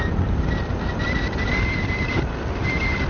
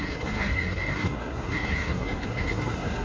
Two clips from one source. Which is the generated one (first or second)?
second